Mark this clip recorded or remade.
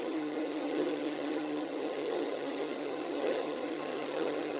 remade